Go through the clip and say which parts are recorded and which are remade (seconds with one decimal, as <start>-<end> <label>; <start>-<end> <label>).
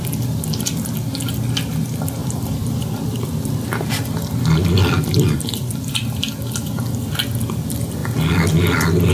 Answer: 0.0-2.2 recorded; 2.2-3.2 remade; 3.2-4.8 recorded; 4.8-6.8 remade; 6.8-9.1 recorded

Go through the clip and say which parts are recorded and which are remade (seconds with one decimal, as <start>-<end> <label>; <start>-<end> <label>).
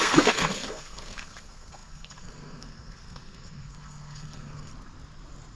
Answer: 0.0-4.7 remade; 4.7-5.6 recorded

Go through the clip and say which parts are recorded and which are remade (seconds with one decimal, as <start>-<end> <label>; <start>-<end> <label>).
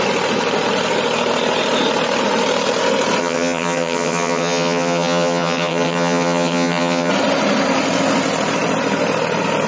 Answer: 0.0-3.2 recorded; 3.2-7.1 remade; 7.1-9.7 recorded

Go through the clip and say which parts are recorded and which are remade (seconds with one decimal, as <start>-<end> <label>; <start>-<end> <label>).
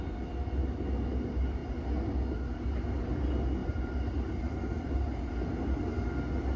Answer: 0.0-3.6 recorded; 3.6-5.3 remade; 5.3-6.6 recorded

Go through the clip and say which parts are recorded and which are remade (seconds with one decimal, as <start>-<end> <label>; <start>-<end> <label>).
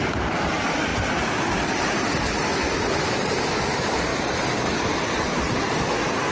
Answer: 0.0-6.3 recorded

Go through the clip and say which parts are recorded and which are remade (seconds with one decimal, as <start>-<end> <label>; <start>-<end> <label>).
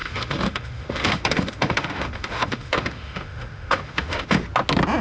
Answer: 0.0-4.4 remade; 4.4-5.0 recorded